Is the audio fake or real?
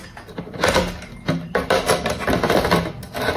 real